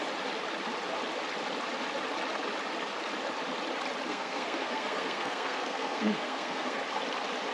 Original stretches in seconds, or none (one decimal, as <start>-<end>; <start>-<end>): 0.0-4.1; 6.8-7.5